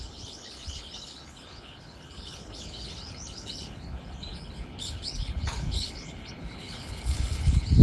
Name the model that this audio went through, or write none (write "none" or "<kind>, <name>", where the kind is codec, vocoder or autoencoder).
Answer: codec, HILCodec